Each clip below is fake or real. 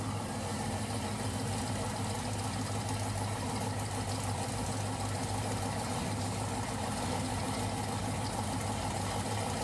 real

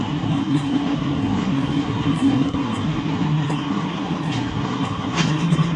fake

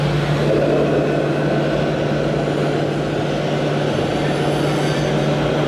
real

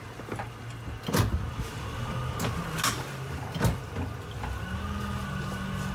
real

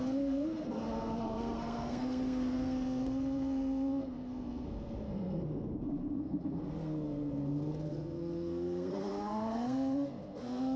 fake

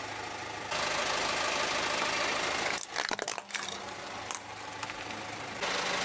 real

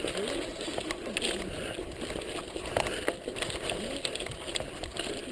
real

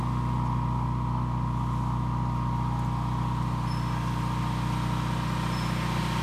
real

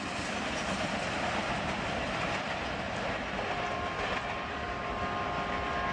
real